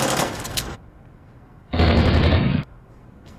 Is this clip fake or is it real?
fake